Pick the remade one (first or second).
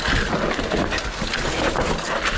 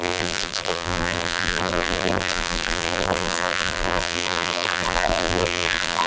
second